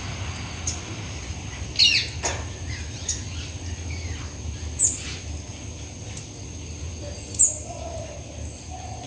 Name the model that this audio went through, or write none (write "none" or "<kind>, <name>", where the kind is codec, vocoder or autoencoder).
none